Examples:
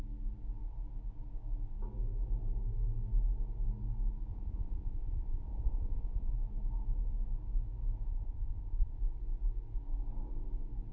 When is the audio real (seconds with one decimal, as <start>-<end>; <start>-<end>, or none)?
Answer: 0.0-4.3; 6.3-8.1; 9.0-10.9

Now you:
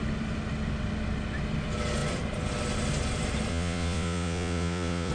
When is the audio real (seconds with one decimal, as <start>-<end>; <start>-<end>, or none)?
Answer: 0.0-3.5

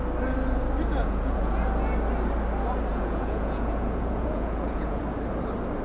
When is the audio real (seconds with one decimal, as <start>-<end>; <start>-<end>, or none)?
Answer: 0.0-1.0; 1.6-2.9; 5.0-5.8

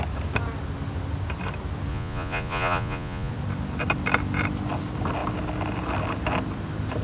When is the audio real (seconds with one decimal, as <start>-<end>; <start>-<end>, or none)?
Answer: 0.0-1.9; 3.3-7.0